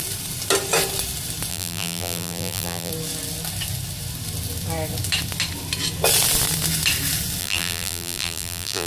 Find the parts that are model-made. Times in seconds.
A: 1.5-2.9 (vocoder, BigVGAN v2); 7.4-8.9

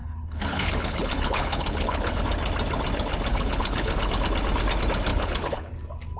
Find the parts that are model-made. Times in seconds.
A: 0.0-2.2 (codec, HILCodec); 3.3-4.1; 5.1-5.7

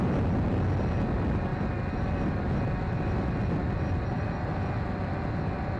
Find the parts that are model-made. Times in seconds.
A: none

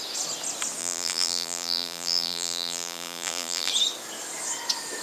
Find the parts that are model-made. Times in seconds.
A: 0.8-3.7 (vocoder, BigVGAN v2)

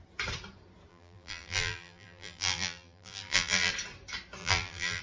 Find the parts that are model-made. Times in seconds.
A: 0.9-3.7 (vocoder, BigVGAN v2); 4.4-5.0